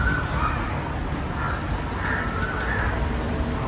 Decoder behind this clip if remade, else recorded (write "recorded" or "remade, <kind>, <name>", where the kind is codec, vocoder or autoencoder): recorded